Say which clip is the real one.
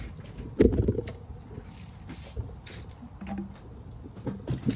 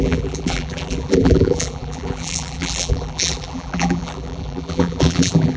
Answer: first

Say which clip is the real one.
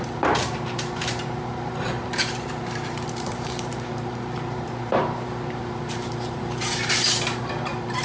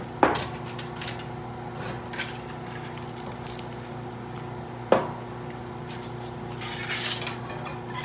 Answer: second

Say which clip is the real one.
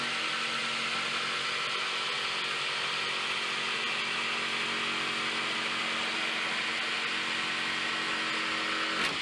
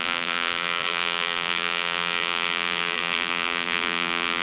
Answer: first